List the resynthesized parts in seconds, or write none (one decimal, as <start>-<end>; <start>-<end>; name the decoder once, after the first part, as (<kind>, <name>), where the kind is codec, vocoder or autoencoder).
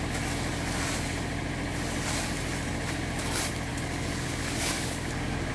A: 3.7-5.5 (codec, DAC)